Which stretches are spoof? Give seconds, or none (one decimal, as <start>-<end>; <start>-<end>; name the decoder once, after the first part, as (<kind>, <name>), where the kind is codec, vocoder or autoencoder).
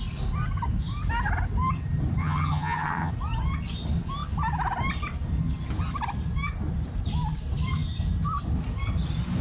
2.2-3.1 (vocoder, HiFi-GAN)